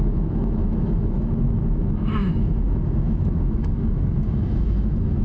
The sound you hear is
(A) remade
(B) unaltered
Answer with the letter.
A